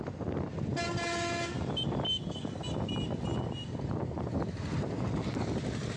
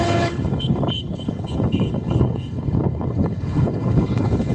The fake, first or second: second